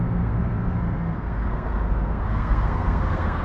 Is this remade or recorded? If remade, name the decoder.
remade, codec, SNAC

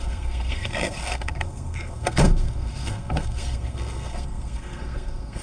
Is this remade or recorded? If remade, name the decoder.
remade, codec, SNAC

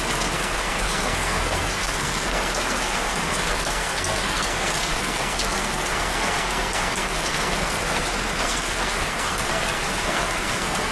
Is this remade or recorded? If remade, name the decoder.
remade, codec, SNAC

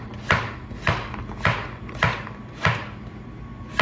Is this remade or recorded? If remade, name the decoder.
recorded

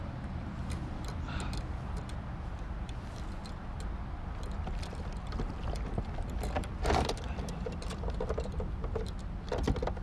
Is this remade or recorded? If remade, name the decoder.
recorded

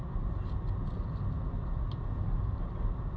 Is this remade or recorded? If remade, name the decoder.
recorded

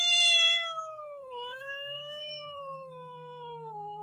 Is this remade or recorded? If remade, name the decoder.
remade, codec, SNAC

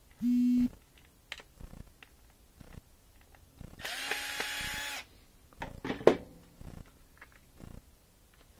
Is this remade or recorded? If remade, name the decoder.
recorded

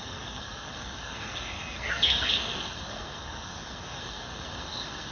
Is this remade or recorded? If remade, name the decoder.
remade, codec, SNAC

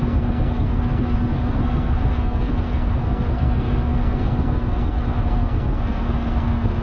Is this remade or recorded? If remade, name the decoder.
remade, codec, SNAC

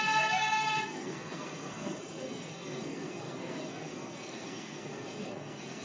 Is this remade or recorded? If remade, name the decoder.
remade, codec, SNAC